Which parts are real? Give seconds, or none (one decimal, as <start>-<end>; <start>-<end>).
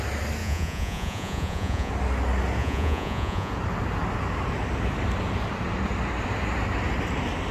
0.0-0.4; 1.9-2.6; 3.5-7.5